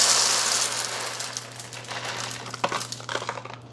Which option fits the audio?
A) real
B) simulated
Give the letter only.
A